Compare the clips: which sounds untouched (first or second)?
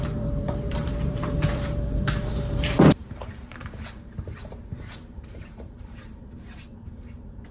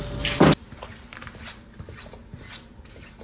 second